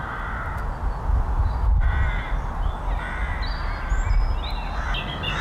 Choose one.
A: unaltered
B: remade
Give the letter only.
A